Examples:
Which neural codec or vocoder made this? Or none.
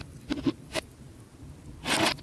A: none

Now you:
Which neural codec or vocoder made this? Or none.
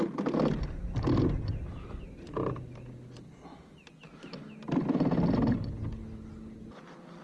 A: none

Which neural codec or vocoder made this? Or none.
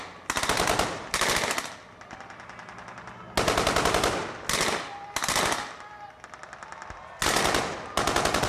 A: none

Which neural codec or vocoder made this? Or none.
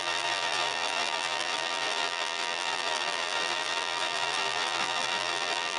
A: vocoder, BigVGAN v2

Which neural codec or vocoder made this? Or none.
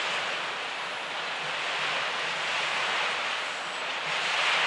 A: none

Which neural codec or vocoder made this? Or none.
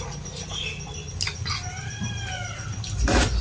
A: vocoder, BigVGAN v2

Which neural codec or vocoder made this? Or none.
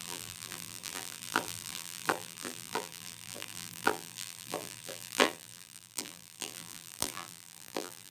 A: vocoder, BigVGAN v2